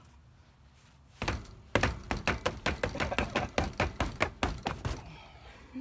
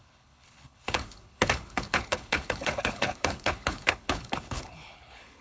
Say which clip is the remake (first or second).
second